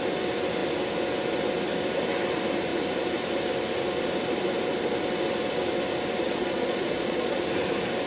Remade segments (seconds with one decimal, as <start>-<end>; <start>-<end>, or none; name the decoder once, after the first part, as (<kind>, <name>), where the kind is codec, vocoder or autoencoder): 6.2-7.4 (vocoder, Vocos)

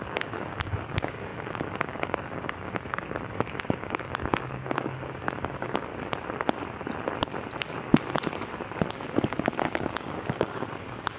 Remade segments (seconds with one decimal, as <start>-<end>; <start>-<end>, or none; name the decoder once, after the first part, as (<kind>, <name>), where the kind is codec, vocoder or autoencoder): 0.0-5.9 (codec, DAC); 8.9-11.2

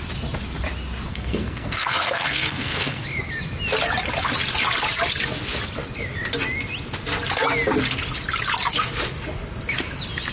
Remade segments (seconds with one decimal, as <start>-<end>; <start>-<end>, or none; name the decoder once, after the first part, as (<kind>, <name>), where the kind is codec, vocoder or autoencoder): 1.1-3.0 (codec, SNAC)

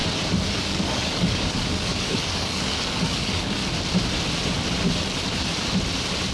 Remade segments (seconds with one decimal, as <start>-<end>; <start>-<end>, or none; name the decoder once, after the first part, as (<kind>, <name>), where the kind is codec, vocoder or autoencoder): 0.5-3.6 (codec, DAC)

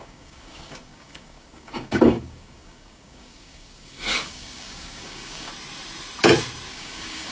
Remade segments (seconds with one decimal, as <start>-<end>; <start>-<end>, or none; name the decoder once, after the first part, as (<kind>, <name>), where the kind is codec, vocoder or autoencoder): 0.0-5.5 (codec, DAC); 6.7-7.3